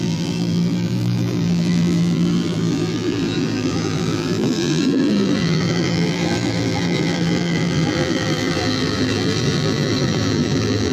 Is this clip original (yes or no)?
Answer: no